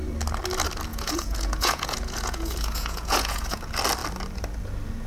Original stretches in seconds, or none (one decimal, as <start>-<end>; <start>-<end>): 0.0-0.9; 3.6-5.1